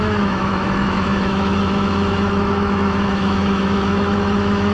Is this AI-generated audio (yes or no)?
yes